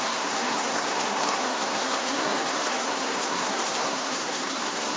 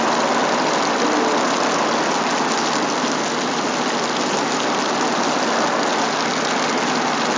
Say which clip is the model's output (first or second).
first